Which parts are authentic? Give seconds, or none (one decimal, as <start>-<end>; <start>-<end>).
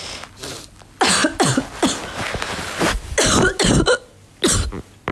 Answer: 0.0-5.1